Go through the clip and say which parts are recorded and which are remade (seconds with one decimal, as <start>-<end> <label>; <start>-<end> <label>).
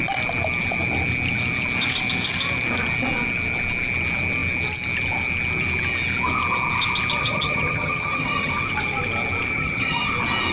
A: 0.0-7.2 recorded; 7.2-8.5 remade; 8.5-9.5 recorded; 9.5-10.1 remade; 10.1-10.5 recorded